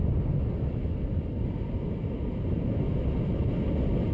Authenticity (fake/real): real